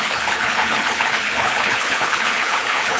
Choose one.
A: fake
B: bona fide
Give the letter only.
A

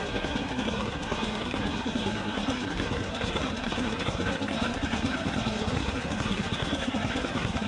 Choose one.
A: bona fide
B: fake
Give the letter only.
B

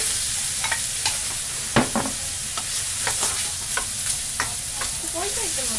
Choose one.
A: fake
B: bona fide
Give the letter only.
B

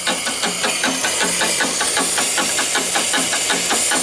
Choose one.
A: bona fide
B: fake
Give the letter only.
A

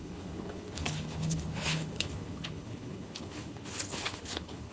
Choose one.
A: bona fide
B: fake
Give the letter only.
B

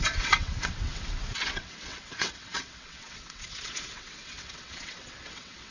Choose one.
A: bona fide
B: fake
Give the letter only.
B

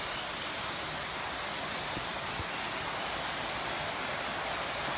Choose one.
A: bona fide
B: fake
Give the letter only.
A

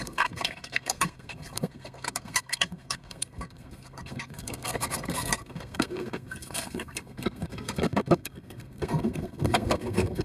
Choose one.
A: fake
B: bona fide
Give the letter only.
A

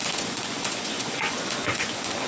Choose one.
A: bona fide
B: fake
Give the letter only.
B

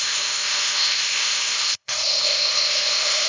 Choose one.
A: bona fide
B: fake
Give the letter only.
B